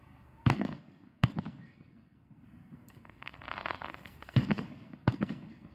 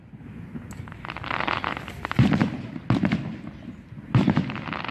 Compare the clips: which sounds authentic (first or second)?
second